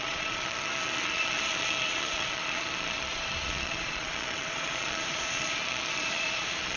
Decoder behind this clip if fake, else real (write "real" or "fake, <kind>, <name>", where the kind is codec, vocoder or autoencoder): fake, vocoder, Vocos